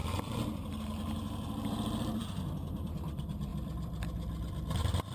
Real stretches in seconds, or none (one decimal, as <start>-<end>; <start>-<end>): 0.0-0.8